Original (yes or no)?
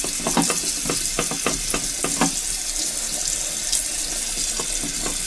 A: yes